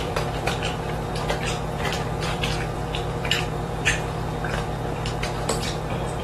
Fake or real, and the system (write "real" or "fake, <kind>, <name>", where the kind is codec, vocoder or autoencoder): fake, vocoder, BigVGAN v2